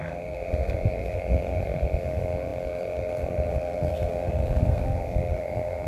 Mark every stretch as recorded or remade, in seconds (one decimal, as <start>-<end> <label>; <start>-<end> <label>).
0.0-5.9 remade